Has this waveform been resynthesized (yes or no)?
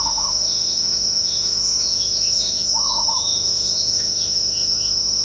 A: yes